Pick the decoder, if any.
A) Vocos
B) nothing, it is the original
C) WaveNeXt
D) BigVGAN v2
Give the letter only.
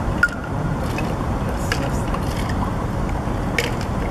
B